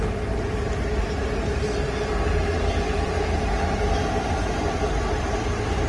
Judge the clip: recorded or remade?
recorded